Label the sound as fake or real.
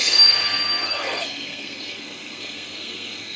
fake